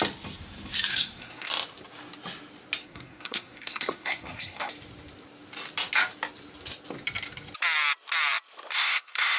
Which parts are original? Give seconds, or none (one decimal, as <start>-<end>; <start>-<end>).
0.0-0.9; 1.5-2.8; 4.7-8.7